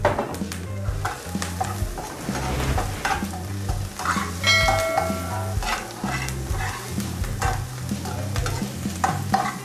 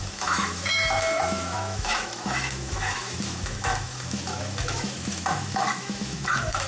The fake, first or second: second